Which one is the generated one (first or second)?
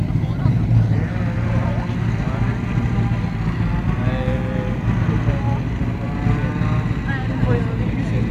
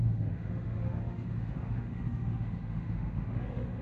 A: second